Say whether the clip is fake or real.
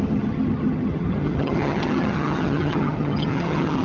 fake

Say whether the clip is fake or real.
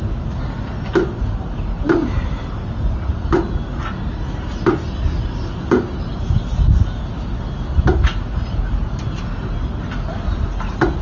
real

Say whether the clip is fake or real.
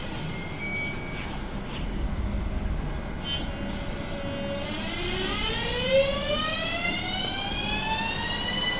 real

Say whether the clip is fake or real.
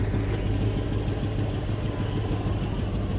real